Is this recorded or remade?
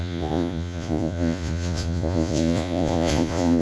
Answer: remade